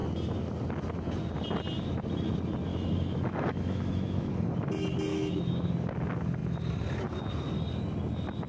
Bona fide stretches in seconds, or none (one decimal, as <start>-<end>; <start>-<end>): 0.0-2.7; 4.3-5.1; 5.7-8.5